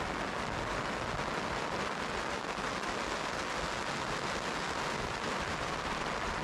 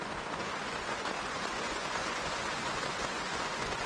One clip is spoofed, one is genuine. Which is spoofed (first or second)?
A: second